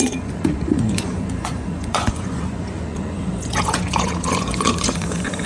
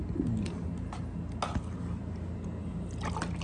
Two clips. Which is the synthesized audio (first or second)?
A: first